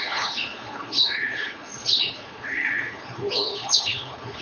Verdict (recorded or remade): remade